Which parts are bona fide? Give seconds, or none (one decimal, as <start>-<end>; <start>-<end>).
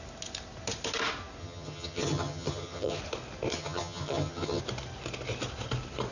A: 0.0-1.4; 3.0-3.5; 4.6-6.1